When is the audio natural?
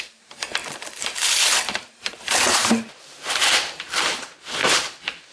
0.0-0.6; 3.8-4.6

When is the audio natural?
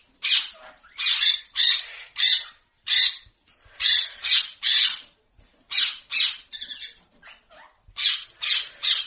0.0-9.1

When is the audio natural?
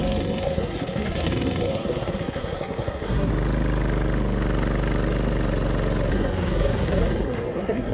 3.3-6.1